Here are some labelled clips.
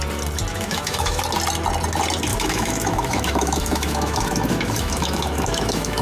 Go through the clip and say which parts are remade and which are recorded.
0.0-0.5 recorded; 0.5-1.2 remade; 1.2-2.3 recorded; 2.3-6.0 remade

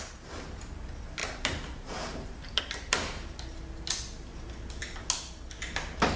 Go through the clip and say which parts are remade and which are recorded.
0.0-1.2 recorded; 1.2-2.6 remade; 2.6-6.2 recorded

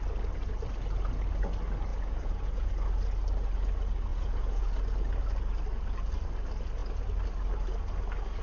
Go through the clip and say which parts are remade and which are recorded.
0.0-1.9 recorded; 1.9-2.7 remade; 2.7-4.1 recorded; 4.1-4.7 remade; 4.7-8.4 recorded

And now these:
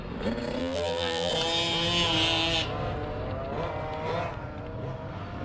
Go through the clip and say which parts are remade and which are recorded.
0.0-0.6 recorded; 0.6-1.3 remade; 1.3-5.4 recorded